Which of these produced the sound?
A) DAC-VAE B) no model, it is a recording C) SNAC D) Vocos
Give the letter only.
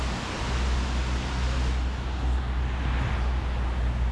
B